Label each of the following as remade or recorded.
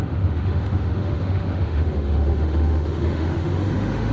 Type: remade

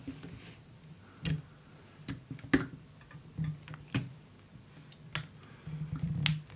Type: recorded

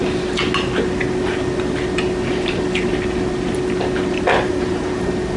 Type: recorded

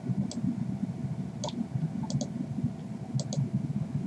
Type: recorded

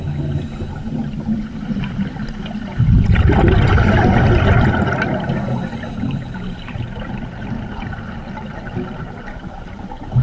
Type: recorded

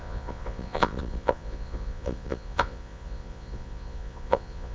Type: remade